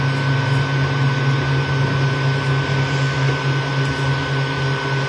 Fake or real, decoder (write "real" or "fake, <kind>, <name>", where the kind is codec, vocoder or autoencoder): real